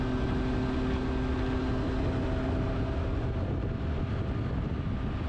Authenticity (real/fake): real